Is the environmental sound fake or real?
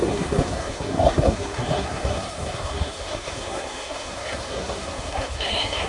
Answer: fake